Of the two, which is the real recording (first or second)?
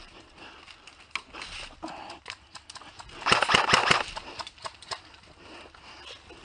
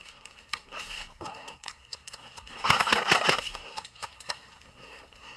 first